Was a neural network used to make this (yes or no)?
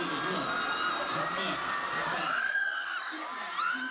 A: no